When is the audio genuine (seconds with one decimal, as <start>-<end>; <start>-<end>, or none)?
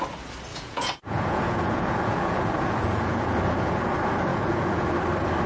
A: 0.0-0.5; 3.8-4.3; 4.9-5.5